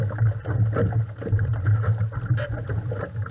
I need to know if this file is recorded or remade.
recorded